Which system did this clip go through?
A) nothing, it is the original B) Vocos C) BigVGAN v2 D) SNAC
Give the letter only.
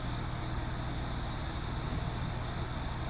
A